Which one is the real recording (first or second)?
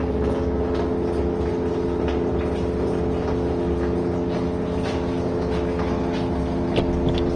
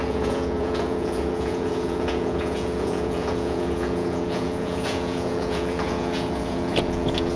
first